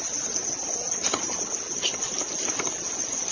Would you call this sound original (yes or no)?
yes